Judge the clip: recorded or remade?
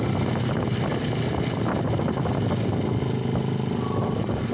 recorded